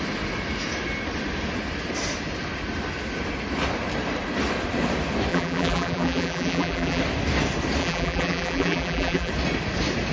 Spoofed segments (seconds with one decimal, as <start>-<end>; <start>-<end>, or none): 5.3-7.0; 7.8-9.3